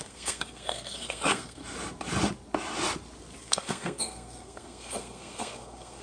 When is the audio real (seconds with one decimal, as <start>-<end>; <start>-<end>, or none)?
1.6-3.4